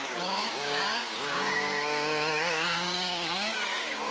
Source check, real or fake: fake